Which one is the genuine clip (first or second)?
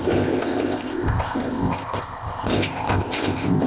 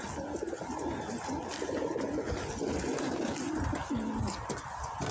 second